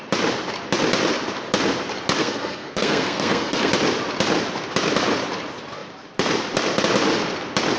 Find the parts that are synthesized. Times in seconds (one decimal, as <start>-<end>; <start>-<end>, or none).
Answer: 2.2-3.7